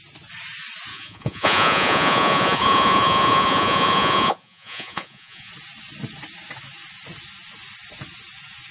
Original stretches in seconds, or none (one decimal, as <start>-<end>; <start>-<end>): 0.0-0.9; 5.5-8.7